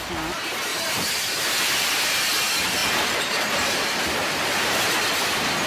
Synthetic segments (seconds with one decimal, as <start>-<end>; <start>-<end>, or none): 0.7-2.3; 2.8-4.9